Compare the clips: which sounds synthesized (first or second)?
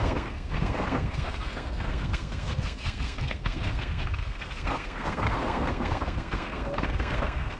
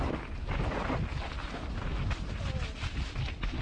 first